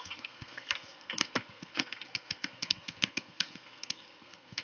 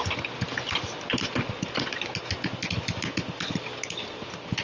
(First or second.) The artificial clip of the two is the first